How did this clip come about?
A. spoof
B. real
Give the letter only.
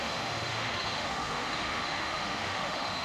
A